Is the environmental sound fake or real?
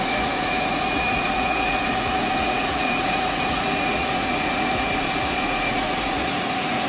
fake